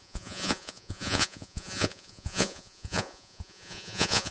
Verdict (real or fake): fake